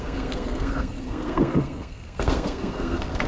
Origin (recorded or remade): remade